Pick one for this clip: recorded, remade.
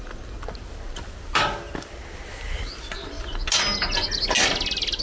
recorded